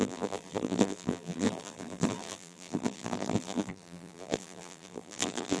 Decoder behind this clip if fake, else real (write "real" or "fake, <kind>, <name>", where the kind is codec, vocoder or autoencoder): fake, vocoder, BigVGAN v2